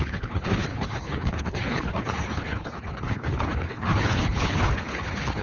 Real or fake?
fake